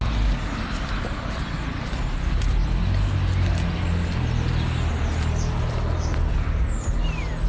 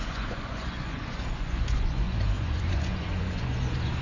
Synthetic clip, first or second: second